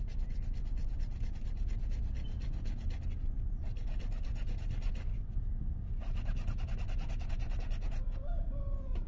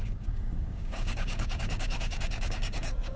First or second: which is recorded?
first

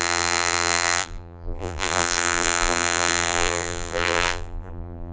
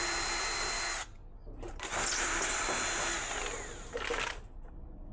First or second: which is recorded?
second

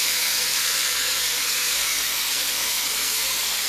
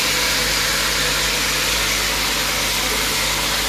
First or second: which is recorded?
second